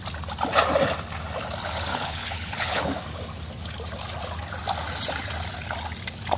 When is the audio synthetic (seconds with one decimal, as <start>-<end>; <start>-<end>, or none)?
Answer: 1.9-2.8